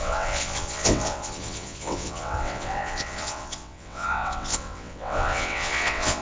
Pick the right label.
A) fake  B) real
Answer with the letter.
A